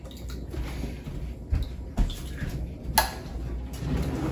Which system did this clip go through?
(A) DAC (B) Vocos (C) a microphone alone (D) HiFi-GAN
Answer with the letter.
C